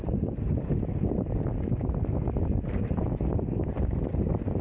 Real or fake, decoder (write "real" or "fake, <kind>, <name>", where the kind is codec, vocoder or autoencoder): real